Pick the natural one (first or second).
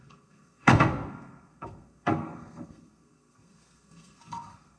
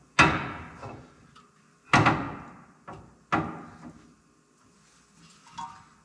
second